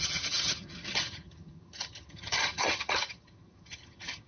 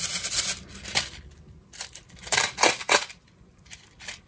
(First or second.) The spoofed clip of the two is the first